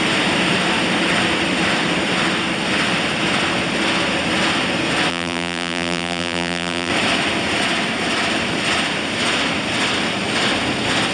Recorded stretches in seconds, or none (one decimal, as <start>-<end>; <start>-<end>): 0.0-5.1; 6.9-11.1

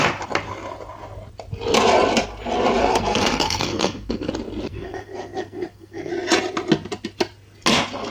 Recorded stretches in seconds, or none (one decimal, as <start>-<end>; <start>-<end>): 0.0-2.8; 4.3-4.7; 6.1-8.1

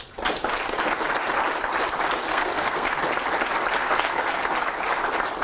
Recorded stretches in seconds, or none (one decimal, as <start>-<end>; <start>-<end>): 0.0-2.3; 3.0-3.8; 4.5-5.4

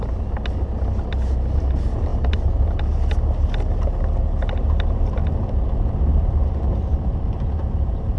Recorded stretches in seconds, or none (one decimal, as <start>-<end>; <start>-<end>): 0.0-2.1; 2.8-8.2

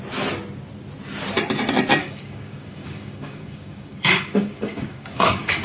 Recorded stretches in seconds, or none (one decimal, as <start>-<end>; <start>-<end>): 0.0-2.0

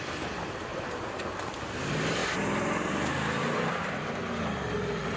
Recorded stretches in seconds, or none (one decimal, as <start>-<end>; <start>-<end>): 0.0-0.7; 1.2-2.2; 4.2-5.2

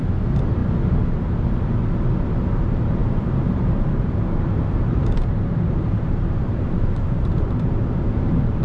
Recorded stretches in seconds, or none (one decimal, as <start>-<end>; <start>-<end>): 0.0-3.0; 7.7-8.6